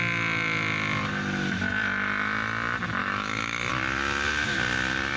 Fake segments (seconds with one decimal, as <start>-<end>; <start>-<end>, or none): 3.0-3.7